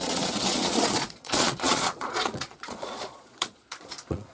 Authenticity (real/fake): fake